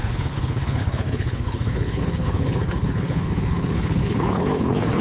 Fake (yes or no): yes